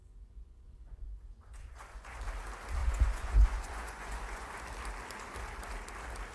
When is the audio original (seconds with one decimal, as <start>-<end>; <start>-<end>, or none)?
2.2-2.8; 4.5-6.3